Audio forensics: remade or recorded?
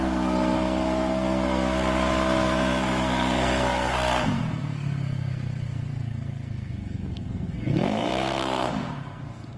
remade